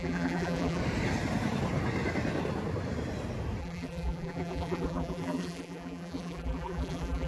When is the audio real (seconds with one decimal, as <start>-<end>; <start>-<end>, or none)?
0.8-3.6